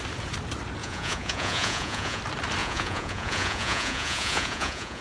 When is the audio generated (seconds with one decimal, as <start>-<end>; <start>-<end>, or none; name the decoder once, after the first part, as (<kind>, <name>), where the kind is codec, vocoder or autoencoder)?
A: 0.8-2.2 (vocoder, Vocos); 2.6-5.0